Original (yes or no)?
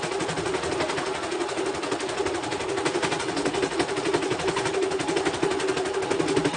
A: yes